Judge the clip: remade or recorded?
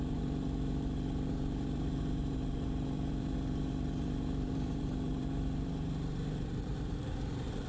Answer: remade